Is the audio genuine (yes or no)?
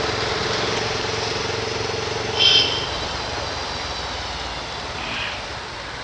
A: yes